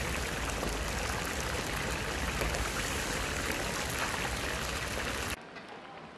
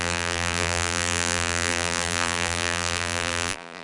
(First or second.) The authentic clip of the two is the first